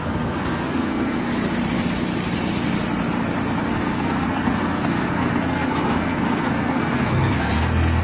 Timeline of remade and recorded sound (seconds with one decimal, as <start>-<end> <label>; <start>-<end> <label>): 0.0-1.3 remade; 1.3-3.7 recorded; 3.7-8.0 remade